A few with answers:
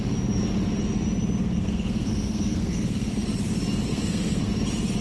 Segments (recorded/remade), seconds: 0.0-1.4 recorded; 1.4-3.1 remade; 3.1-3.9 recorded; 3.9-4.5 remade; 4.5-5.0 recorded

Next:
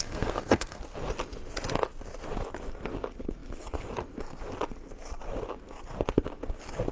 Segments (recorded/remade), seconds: 0.0-0.8 remade; 0.8-6.9 recorded